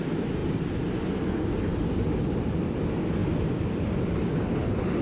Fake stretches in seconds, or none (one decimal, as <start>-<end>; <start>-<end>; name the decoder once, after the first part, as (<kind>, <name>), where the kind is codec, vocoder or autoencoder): none